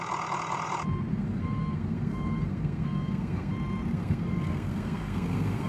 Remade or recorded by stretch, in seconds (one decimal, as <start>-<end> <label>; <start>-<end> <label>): 0.0-1.1 recorded; 1.1-3.5 remade; 3.5-3.9 recorded; 3.9-5.7 remade

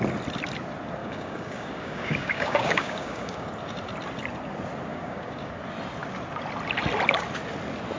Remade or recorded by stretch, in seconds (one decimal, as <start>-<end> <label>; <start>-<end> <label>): 0.0-1.0 recorded; 1.0-3.5 remade; 3.5-4.9 recorded; 4.9-5.5 remade; 5.5-8.0 recorded

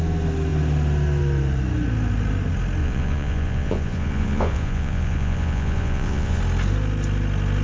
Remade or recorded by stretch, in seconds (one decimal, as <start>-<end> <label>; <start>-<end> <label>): 0.0-2.8 recorded; 2.8-6.4 remade; 6.4-7.6 recorded

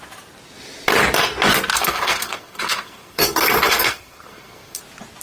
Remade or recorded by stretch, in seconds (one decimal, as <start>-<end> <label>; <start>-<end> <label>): 0.0-1.7 recorded; 1.7-4.8 remade; 4.8-5.2 recorded

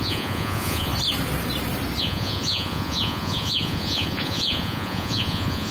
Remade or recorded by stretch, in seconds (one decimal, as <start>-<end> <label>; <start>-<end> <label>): 0.0-0.9 remade; 0.9-2.0 recorded; 2.0-5.7 remade

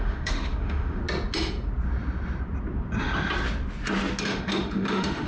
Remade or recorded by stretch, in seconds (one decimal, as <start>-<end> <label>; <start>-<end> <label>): 0.0-1.0 remade; 1.0-4.2 recorded; 4.2-5.3 remade

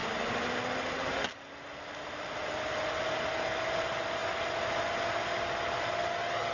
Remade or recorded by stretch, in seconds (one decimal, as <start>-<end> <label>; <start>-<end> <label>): 0.0-6.5 recorded

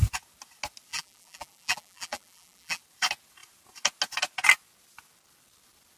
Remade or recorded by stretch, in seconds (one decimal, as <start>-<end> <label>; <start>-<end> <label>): 0.0-0.9 recorded; 0.9-2.8 remade; 2.8-6.0 recorded